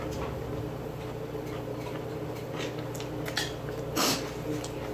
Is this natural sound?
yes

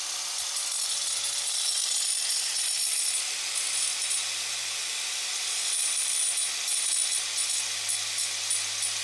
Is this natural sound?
yes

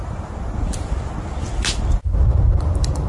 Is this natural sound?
yes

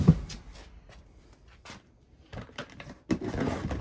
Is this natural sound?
yes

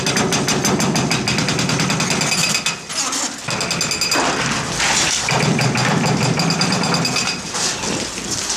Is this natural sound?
yes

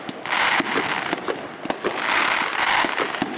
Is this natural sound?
yes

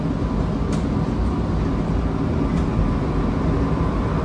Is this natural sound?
yes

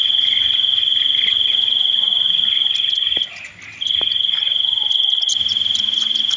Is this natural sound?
yes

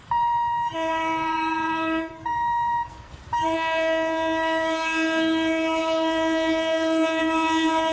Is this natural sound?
no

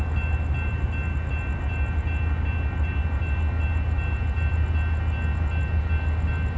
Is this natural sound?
yes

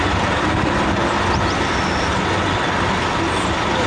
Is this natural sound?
yes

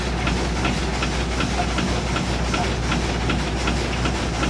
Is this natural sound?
yes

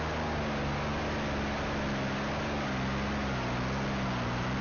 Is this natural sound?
yes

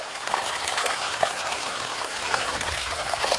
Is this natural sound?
no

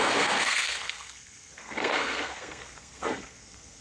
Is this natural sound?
no